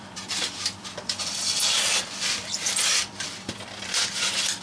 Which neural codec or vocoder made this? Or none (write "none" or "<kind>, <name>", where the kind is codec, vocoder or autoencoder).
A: vocoder, BigVGAN v2